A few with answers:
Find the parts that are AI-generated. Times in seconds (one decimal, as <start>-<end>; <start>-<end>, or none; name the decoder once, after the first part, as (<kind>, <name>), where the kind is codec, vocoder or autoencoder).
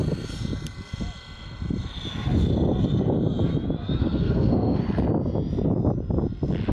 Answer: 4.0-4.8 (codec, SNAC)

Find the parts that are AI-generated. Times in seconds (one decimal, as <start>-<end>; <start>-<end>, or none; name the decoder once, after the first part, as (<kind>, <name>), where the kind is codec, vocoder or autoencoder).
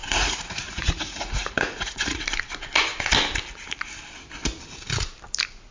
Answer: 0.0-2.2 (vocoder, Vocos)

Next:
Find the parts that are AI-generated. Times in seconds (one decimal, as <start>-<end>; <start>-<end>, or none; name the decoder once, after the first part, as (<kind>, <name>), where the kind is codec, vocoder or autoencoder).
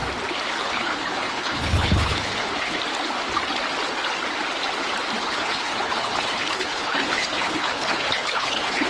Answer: 0.6-2.8 (codec, HILCodec); 5.2-8.9